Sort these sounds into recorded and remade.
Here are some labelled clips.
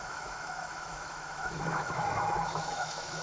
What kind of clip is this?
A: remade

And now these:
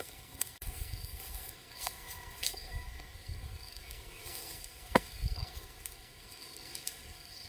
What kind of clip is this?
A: remade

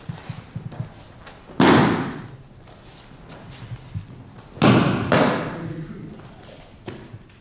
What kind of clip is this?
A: recorded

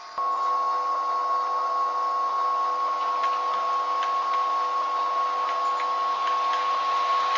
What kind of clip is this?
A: recorded